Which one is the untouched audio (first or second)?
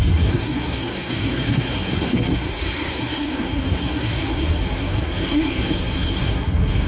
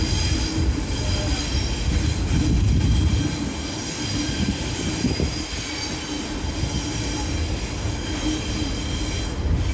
second